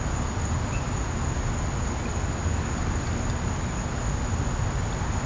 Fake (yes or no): no